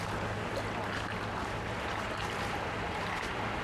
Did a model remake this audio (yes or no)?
no